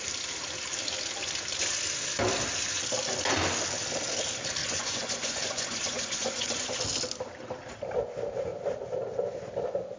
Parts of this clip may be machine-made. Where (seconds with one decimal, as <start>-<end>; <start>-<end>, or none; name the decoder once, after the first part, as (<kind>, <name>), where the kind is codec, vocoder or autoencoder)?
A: 4.6-6.8 (vocoder, Vocos)